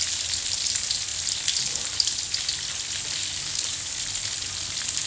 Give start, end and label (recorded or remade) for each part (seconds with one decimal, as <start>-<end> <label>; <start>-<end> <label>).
0.0-3.2 recorded; 3.2-4.0 remade; 4.0-5.1 recorded